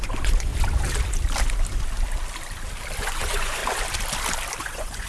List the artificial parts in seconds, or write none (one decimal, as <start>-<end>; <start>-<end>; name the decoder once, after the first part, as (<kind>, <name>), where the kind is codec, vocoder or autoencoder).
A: 0.0-0.5 (vocoder, Vocos); 3.0-3.6; 4.6-5.1